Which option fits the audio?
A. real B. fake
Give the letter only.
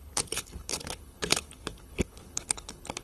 B